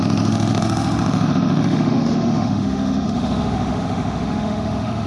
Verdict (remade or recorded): remade